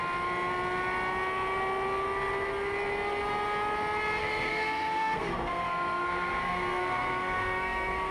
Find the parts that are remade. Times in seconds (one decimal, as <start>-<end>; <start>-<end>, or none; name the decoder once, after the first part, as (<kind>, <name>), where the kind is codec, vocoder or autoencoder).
4.2-8.1 (codec, SNAC)